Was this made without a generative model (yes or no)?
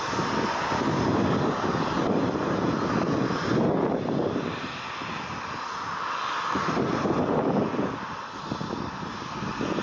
yes